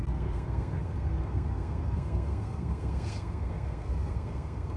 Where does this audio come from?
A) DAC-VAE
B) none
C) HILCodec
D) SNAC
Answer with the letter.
D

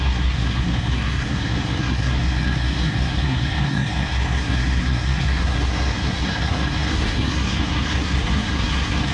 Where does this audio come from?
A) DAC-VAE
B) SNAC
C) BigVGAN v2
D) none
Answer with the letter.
B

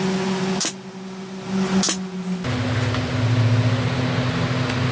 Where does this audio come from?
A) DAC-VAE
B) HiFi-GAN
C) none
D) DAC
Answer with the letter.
C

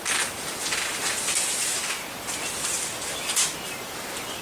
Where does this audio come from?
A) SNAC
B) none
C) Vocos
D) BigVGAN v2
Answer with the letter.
B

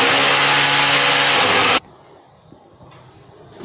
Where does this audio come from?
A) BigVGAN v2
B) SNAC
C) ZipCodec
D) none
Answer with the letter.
D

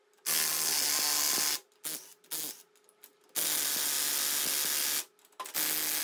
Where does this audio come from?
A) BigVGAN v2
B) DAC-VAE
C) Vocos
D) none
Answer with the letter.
D